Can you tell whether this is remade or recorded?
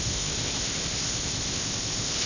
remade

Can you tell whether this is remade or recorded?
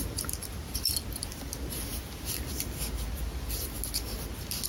recorded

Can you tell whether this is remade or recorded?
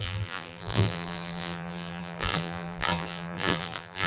remade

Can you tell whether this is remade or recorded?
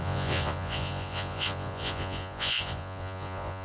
remade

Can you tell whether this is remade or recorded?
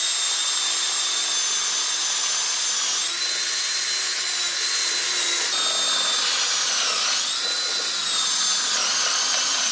recorded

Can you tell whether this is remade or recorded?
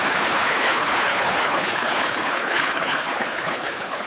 remade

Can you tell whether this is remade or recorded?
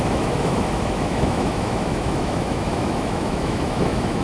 remade